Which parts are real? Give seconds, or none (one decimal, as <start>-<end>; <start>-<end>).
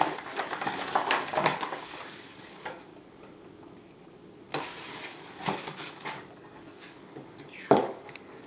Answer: 2.9-4.9